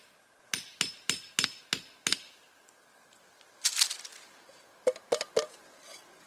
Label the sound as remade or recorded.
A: recorded